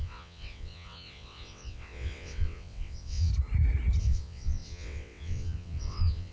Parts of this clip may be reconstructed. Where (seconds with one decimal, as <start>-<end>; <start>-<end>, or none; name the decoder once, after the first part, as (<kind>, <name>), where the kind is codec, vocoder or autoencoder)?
0.0-3.3 (vocoder, WaveNeXt); 4.0-6.3